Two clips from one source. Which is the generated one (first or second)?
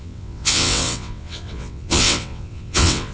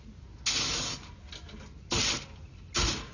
first